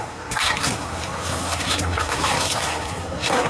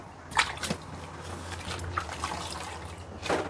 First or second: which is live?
second